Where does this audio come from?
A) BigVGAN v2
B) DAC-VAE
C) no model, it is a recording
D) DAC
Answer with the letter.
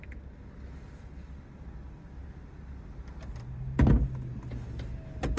C